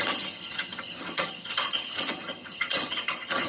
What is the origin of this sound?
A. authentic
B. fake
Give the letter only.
B